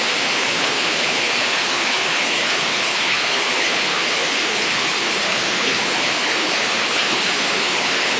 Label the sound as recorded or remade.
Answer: remade